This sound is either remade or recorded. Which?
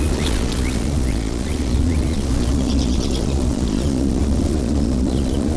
remade